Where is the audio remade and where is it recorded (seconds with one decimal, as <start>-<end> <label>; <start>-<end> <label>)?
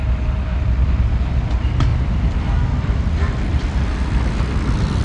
0.0-1.9 recorded; 1.9-3.9 remade; 3.9-5.0 recorded